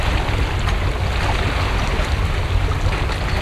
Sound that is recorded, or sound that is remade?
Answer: recorded